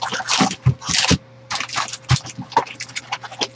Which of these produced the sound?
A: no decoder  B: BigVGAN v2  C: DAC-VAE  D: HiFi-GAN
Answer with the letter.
A